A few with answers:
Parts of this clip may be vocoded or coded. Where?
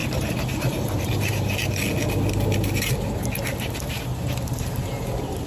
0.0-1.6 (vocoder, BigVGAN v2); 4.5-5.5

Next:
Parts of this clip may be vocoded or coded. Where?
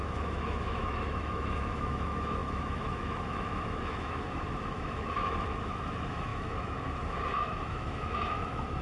0.0-8.8 (autoencoder, DAC-VAE)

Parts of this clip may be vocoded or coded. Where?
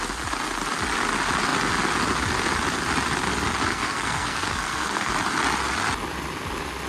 3.7-5.1 (codec, SNAC)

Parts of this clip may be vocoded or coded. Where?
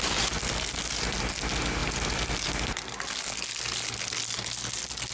none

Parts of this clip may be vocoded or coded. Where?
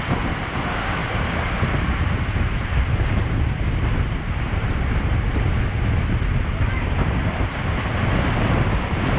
1.0-5.4 (vocoder, BigVGAN v2); 6.4-7.3; 8.1-8.6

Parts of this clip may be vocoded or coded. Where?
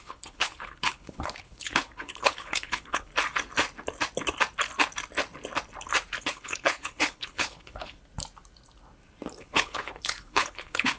0.0-3.1 (codec, HILCodec); 6.2-8.0; 9.4-11.0